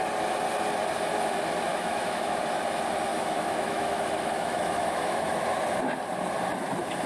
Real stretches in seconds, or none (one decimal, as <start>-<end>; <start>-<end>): 0.0-1.7; 2.4-3.1; 5.4-7.1